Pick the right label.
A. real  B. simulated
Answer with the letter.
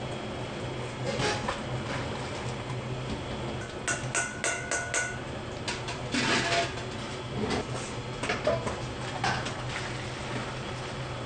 A